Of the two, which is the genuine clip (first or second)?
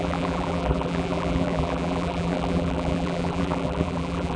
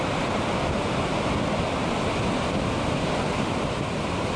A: second